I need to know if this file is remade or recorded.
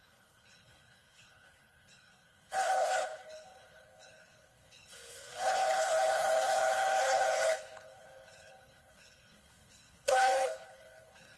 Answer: remade